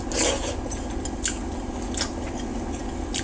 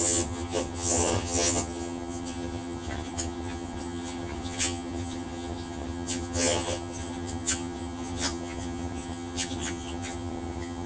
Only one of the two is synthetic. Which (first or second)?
second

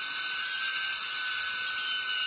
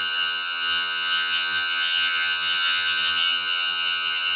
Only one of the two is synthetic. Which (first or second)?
second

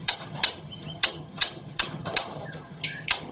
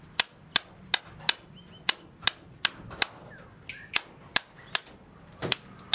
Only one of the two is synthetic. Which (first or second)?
first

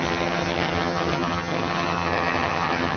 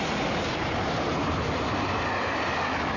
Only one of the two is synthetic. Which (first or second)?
first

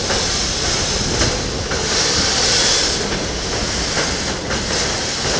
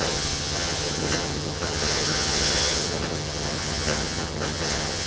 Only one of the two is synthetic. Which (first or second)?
second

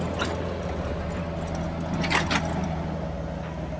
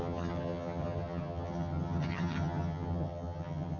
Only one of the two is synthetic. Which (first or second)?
second